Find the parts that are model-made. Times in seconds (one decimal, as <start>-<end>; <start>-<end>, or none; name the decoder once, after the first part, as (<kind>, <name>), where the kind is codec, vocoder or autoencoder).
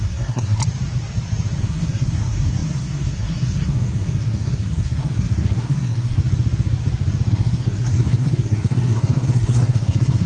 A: 0.0-0.6 (codec, SNAC); 1.6-6.2; 7.3-10.3